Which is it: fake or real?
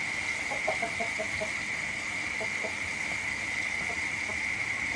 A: real